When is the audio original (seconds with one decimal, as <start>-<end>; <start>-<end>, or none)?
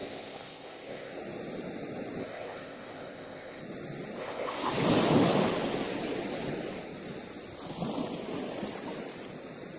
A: 1.1-2.2; 3.6-4.2; 4.7-9.8